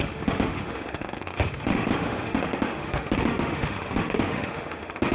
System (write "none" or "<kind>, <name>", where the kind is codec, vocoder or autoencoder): autoencoder, DAC-VAE